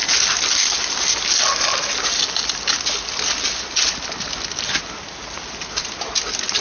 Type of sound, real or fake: real